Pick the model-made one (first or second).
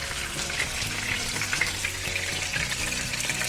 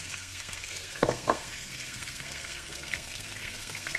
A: second